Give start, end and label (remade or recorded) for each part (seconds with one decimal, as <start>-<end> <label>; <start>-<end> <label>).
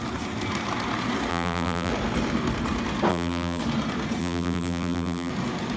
0.0-1.3 recorded; 1.3-1.9 remade; 1.9-3.1 recorded; 3.1-3.6 remade; 3.6-4.2 recorded; 4.2-5.3 remade; 5.3-5.8 recorded